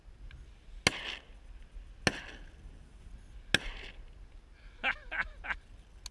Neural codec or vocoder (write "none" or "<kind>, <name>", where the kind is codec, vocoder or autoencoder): none